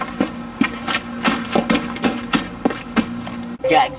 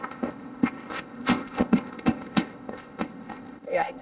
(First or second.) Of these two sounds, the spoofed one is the second